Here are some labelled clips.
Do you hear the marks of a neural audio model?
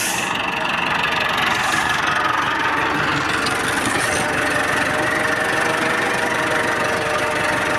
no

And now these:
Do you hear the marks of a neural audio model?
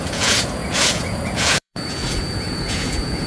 yes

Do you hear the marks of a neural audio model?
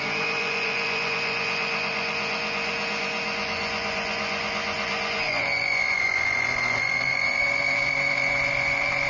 yes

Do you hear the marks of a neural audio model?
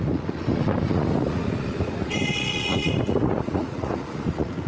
yes